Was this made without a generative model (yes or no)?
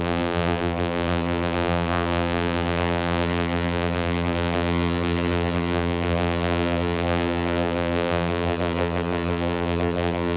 no